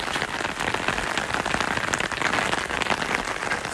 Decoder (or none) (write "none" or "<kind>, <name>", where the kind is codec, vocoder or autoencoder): none